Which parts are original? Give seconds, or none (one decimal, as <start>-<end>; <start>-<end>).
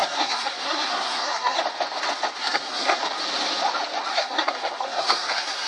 1.6-2.4; 3.0-4.1